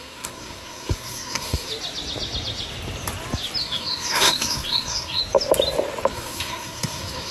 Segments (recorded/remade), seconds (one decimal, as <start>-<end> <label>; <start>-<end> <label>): 0.0-1.7 remade; 1.7-3.6 recorded; 3.6-5.2 remade; 5.2-6.1 recorded; 6.1-7.3 remade